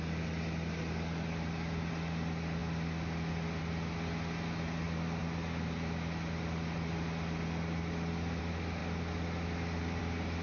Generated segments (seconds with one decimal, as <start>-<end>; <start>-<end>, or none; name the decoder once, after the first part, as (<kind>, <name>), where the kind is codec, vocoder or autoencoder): none